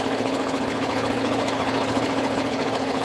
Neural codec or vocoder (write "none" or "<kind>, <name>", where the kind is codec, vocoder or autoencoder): codec, HILCodec